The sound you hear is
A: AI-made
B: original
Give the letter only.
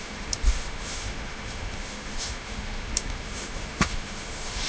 A